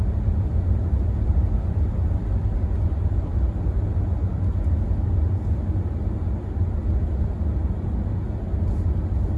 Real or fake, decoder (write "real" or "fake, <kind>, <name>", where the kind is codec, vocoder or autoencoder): real